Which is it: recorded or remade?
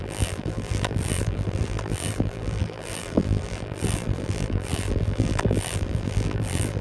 remade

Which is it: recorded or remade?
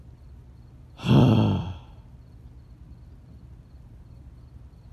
recorded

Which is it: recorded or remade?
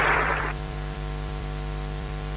remade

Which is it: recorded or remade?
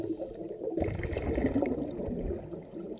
recorded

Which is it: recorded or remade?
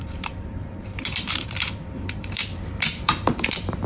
remade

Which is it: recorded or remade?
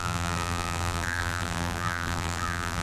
remade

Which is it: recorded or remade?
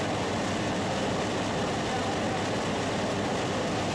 recorded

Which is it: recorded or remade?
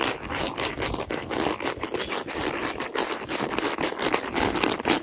remade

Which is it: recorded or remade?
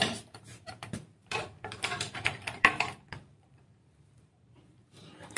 remade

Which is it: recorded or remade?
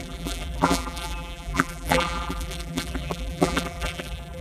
remade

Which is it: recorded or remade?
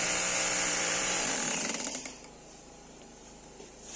remade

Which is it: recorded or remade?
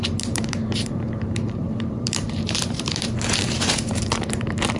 remade